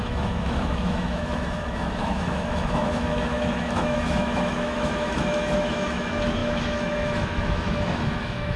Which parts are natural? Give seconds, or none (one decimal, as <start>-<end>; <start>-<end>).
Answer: none